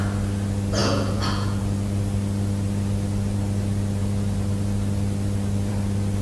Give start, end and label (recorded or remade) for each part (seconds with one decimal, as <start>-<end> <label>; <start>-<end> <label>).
0.0-0.8 recorded; 0.8-1.6 remade; 1.6-6.2 recorded